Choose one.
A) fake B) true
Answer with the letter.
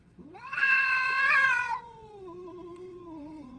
A